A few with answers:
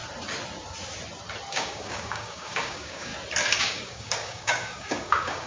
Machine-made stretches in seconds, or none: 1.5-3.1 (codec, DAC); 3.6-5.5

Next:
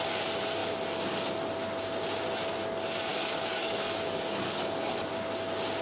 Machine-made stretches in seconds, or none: 3.1-5.1 (codec, DAC)

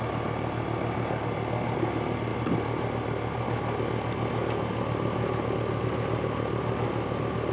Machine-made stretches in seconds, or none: none

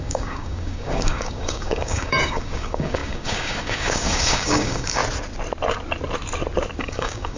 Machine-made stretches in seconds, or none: 0.0-5.0 (codec, DAC); 6.8-7.4

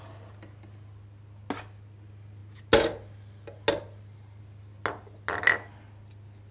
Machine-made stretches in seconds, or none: none

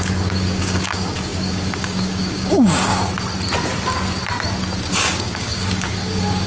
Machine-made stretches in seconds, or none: 0.0-2.9 (codec, DAC); 4.8-6.5

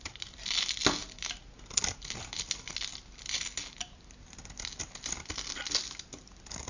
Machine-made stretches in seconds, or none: none

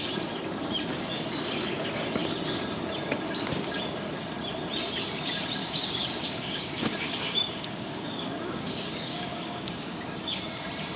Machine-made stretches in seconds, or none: 5.6-10.4 (codec, DAC)